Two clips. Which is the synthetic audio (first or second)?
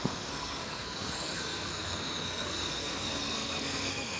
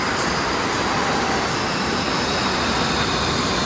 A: first